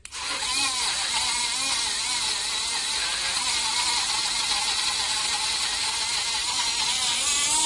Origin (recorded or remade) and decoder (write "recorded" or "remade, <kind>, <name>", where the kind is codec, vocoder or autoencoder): recorded